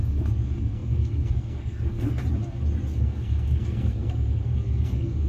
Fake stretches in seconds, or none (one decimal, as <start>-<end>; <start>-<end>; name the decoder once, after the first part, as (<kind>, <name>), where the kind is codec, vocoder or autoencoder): 0.0-2.2 (codec, SNAC); 2.9-5.3